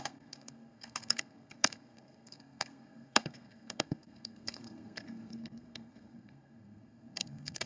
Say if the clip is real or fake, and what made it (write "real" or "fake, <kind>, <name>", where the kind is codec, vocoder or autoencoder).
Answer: fake, codec, SNAC